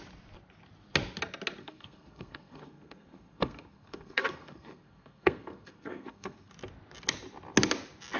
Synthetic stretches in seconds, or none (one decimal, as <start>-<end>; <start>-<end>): 1.6-6.5